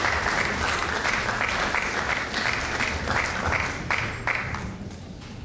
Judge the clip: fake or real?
real